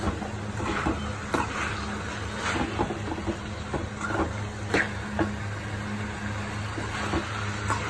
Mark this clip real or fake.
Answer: real